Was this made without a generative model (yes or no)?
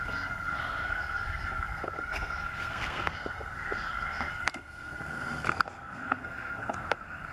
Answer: no